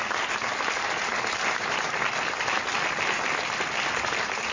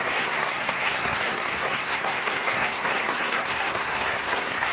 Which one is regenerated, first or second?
second